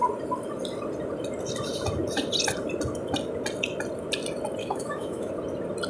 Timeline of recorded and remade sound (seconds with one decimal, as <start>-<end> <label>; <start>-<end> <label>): 0.0-4.6 recorded; 4.6-5.3 remade; 5.3-5.9 recorded